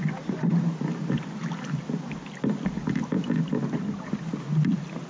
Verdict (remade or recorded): recorded